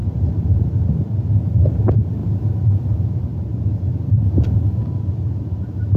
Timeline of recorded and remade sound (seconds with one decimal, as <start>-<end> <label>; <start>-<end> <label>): 0.0-1.0 remade; 1.0-1.7 recorded; 1.7-6.0 remade